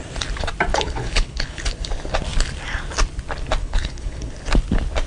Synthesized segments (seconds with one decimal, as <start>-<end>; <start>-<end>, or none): 0.7-1.6; 3.6-4.3